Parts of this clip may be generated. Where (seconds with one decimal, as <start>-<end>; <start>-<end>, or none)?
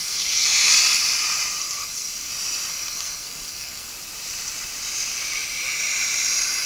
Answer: 0.0-0.7; 1.6-2.3; 2.7-3.9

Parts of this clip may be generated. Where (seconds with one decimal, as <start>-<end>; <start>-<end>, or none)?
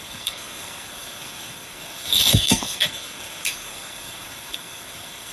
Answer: 0.0-5.3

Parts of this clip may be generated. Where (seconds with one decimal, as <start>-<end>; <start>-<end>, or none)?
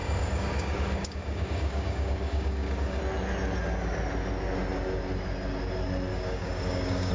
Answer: 0.0-3.0; 6.1-7.1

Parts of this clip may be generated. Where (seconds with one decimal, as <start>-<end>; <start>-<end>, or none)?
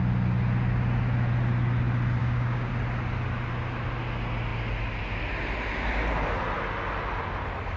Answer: 2.2-2.7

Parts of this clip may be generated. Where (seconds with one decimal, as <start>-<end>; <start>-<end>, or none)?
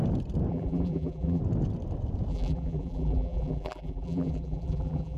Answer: 0.5-1.4; 2.3-5.2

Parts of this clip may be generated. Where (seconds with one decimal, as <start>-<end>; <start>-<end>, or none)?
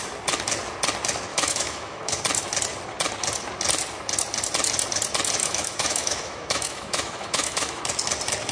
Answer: 1.3-2.2; 5.4-7.8